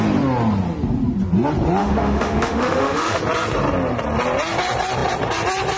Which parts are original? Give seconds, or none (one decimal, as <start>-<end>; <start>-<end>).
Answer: 0.0-1.8; 3.2-5.8